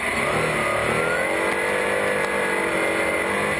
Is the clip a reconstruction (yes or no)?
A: no